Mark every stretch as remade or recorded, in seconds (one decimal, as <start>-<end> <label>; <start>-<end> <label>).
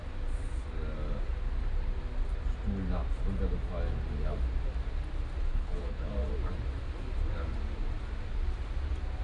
0.0-5.5 recorded; 5.5-6.1 remade; 6.1-9.2 recorded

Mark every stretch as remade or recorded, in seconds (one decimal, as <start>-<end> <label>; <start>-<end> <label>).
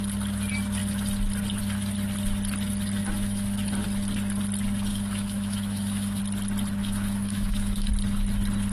0.0-3.0 recorded; 3.0-3.6 remade; 3.6-4.9 recorded; 4.9-6.2 remade; 6.2-6.8 recorded; 6.8-7.9 remade; 7.9-8.7 recorded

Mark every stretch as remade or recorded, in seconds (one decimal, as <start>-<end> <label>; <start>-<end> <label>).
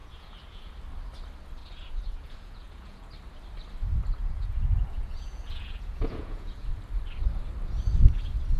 0.0-0.7 remade; 0.7-1.6 recorded; 1.6-3.1 remade; 3.1-4.2 recorded; 4.2-6.7 remade; 6.7-8.6 recorded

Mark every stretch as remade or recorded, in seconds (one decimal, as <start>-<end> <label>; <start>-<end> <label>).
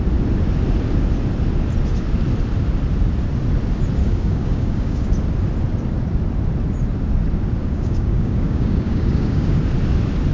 0.0-4.0 recorded; 4.0-5.1 remade; 5.1-7.6 recorded; 7.6-9.6 remade; 9.6-10.3 recorded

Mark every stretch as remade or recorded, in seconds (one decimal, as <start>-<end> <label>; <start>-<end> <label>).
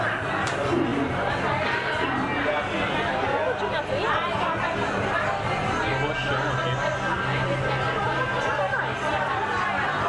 0.0-10.1 recorded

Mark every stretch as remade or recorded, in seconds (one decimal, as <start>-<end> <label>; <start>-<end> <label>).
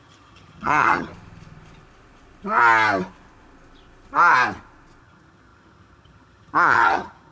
0.0-1.1 remade; 1.1-5.0 recorded; 5.0-7.3 remade